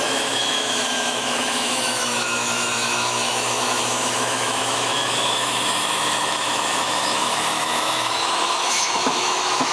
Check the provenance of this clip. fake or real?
fake